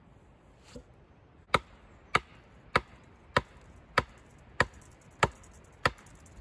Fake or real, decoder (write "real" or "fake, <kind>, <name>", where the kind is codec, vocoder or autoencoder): real